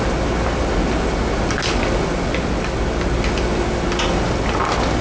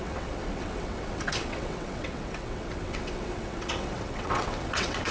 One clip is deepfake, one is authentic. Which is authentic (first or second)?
first